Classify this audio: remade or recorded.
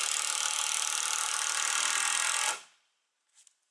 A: recorded